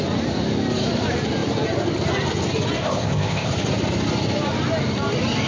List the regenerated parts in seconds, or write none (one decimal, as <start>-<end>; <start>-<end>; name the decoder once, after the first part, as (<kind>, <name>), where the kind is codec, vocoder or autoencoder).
2.8-3.5 (codec, ZipCodec)